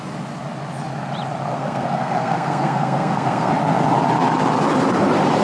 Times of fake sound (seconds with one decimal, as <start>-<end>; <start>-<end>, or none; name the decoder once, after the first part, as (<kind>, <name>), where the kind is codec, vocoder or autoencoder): 1.5-3.5 (codec, SNAC)